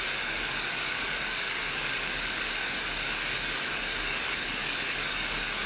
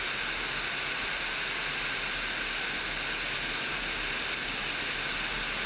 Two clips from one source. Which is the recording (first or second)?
second